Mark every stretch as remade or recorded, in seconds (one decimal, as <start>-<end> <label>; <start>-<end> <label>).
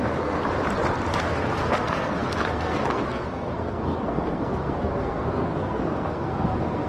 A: 0.0-0.4 remade; 0.4-1.1 recorded; 1.1-6.9 remade